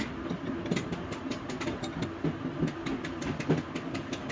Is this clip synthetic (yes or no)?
no